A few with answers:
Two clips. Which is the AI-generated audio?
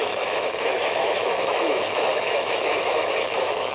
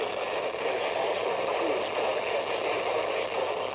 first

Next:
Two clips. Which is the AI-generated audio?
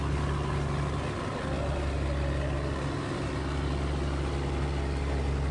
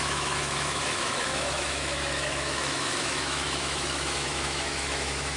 second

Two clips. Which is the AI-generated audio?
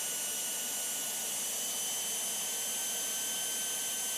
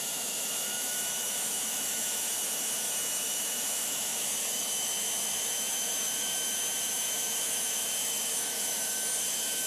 second